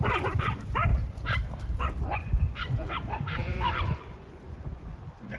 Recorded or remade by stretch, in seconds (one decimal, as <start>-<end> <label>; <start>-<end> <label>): 0.0-0.9 remade; 0.9-1.8 recorded; 1.8-5.4 remade